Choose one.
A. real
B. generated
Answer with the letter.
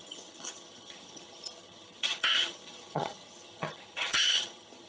B